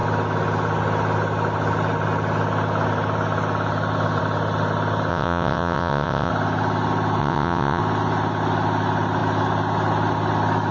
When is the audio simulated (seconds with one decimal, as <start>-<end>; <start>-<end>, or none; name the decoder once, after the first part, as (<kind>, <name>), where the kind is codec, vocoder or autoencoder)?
5.1-6.3 (vocoder, WaveNeXt); 7.2-7.8